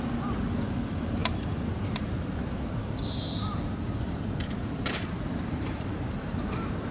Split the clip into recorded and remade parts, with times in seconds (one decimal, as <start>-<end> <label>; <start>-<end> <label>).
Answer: 0.0-3.5 recorded; 3.5-6.3 remade; 6.3-6.9 recorded